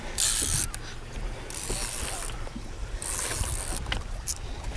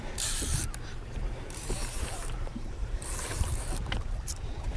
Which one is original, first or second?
first